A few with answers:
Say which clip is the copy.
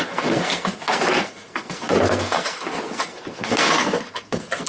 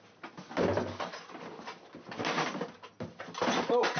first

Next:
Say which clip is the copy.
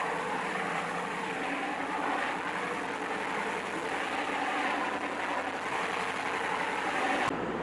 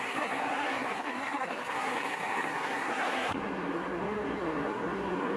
second